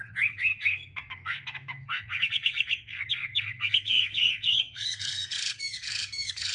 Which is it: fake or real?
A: fake